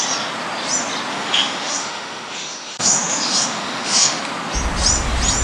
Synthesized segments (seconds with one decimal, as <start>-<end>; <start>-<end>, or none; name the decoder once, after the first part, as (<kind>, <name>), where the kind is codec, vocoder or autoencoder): 1.1-4.2 (autoencoder, DAC-VAE)